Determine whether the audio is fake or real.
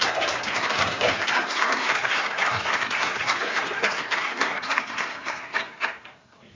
fake